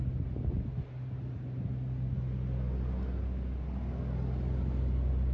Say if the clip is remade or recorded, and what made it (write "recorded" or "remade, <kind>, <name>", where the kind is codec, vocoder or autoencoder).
recorded